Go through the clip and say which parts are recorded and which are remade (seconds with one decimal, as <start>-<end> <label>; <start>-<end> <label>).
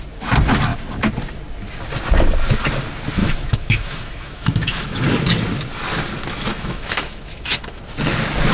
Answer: 0.0-3.2 recorded; 3.2-5.0 remade; 5.0-6.5 recorded; 6.5-7.8 remade; 7.8-8.5 recorded